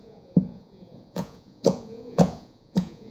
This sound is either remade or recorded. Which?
remade